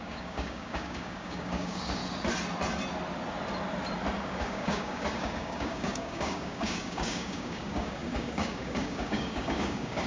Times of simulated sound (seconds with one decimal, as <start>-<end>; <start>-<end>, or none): 0.0-2.0; 4.2-10.1